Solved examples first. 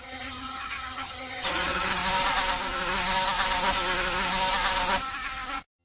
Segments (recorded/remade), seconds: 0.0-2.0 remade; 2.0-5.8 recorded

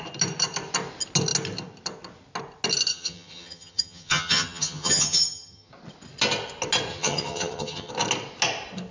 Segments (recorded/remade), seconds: 0.0-2.9 recorded; 2.9-5.7 remade; 5.7-6.9 recorded; 6.9-7.9 remade; 7.9-8.9 recorded

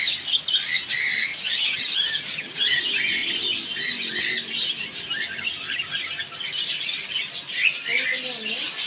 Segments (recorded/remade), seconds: 0.0-1.3 recorded; 1.3-2.8 remade; 2.8-8.9 recorded

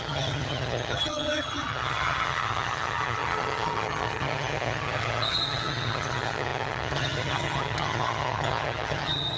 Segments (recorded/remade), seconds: 0.0-9.4 remade

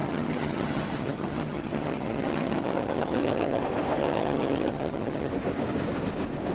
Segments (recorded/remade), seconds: 0.0-3.6 remade; 3.6-4.0 recorded; 4.0-5.3 remade; 5.3-6.5 recorded

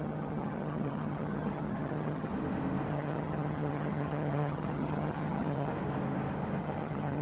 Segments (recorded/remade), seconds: 0.0-2.3 remade; 2.3-2.9 recorded; 2.9-5.7 remade; 5.7-6.6 recorded; 6.6-7.2 remade

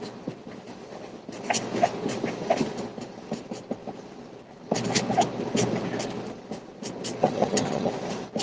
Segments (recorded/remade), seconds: 0.0-7.2 recorded; 7.2-7.9 remade; 7.9-8.4 recorded

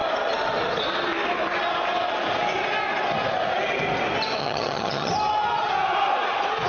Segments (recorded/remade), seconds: 0.0-4.4 recorded; 4.4-5.1 remade; 5.1-6.7 recorded